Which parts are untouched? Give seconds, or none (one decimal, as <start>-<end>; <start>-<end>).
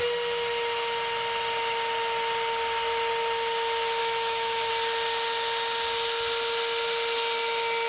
0.0-4.0; 4.7-7.9